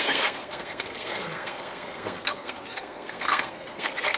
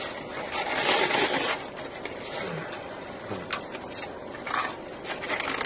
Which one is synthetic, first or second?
first